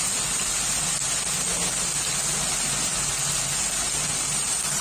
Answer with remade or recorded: recorded